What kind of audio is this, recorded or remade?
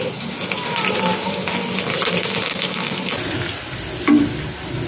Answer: recorded